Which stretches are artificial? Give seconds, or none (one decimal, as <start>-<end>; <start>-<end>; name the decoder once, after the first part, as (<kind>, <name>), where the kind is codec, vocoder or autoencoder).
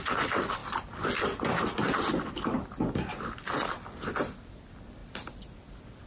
5.0-6.1 (vocoder, BigVGAN v2)